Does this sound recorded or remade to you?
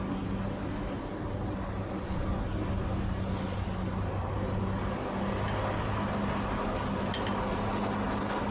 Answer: recorded